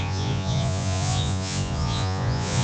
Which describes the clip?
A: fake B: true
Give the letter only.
A